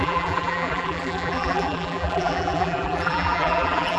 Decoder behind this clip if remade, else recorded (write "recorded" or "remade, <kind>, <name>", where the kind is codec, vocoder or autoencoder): remade, vocoder, BigVGAN v2